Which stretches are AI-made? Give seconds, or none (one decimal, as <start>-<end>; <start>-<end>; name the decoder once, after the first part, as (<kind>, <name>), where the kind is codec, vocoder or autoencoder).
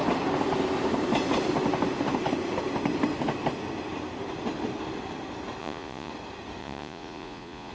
5.6-6.1 (vocoder, Vocos); 6.6-7.7